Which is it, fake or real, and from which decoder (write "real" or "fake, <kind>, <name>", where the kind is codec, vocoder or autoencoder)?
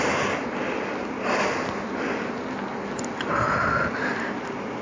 real